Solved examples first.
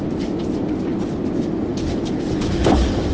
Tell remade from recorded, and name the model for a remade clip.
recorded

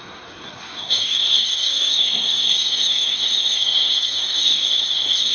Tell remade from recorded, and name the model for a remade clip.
remade, codec, SNAC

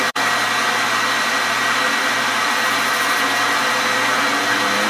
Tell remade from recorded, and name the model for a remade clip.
recorded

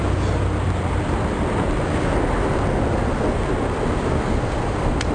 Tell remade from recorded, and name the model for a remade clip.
recorded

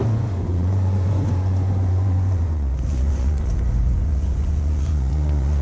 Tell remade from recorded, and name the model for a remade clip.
remade, vocoder, Vocos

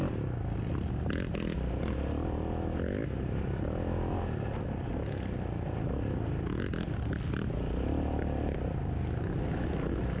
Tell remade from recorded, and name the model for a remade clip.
recorded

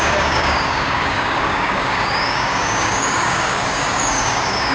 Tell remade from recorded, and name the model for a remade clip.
remade, codec, DAC